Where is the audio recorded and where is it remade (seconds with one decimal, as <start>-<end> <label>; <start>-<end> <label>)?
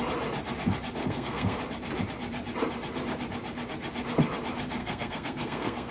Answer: 0.0-1.0 recorded; 1.0-1.6 remade; 1.6-4.8 recorded; 4.8-5.9 remade